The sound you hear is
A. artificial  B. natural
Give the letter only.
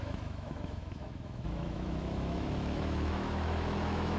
A